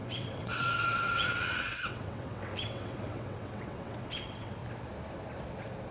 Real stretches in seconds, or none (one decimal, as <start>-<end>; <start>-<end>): 4.6-5.9